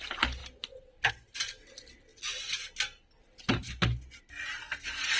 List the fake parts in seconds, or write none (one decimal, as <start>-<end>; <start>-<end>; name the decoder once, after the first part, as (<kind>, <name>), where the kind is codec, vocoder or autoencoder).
0.4-1.1 (vocoder, BigVGAN v2)